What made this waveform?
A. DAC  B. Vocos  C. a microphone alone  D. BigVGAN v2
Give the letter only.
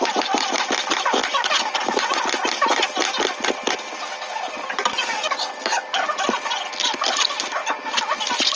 C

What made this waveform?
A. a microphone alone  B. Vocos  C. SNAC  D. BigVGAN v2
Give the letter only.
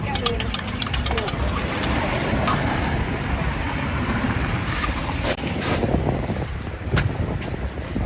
D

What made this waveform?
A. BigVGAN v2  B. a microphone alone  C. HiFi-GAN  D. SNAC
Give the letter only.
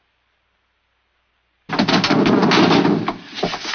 B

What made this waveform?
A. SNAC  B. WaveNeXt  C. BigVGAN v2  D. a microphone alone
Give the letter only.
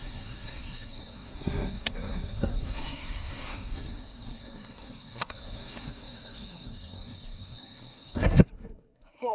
A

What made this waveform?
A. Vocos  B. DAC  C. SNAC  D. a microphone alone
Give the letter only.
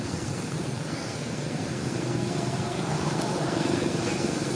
C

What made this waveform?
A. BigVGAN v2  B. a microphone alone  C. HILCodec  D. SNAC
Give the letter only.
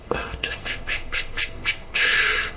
D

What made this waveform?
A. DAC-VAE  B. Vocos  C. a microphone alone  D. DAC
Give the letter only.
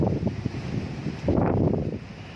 C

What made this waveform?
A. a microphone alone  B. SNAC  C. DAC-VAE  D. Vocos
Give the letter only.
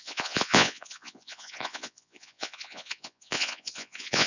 D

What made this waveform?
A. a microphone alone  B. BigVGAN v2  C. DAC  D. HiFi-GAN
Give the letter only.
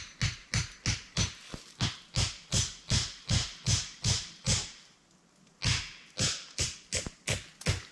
A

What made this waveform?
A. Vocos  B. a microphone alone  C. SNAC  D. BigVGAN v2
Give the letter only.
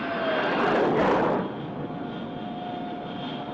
B